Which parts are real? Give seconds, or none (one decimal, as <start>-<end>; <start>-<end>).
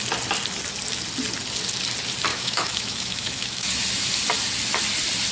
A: 0.0-2.3; 3.8-5.3